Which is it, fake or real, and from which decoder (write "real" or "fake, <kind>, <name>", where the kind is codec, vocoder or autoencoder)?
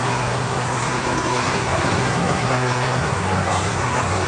fake, codec, SNAC